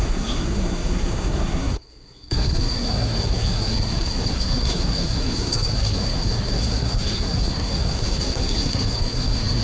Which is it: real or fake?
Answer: fake